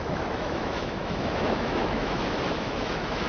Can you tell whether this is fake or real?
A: fake